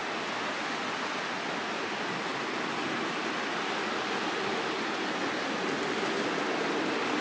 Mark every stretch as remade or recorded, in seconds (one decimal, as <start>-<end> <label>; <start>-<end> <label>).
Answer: 0.0-7.2 recorded